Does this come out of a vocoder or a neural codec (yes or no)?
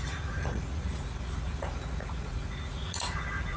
yes